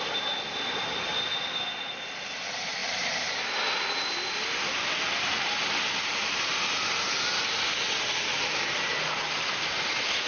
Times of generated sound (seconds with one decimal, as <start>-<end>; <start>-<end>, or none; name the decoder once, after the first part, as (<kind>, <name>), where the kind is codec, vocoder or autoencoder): none